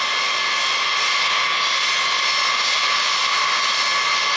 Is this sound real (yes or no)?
yes